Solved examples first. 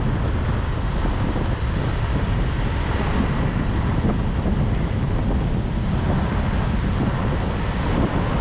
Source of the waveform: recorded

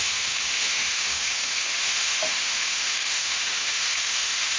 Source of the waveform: remade